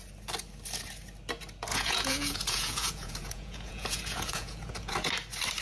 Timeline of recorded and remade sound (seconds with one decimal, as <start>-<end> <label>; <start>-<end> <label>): 0.0-1.7 recorded; 1.7-5.1 remade; 5.1-5.6 recorded